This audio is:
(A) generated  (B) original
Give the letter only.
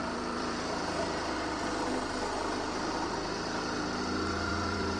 A